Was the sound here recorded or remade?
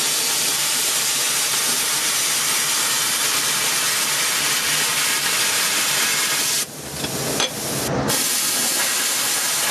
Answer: recorded